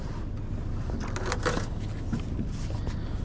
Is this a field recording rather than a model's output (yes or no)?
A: yes